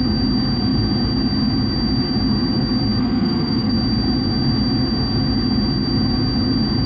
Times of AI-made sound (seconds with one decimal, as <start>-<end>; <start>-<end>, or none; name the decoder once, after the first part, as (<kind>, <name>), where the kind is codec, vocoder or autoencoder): 3.0-3.7 (codec, SNAC)